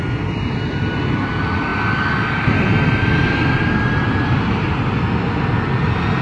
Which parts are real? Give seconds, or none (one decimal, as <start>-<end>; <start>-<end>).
0.0-6.2